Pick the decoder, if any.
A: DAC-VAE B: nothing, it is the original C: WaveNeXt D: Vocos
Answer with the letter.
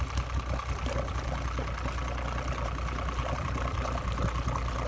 B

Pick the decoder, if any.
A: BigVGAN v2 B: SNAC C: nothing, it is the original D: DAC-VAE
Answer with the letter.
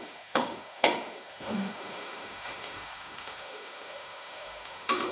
D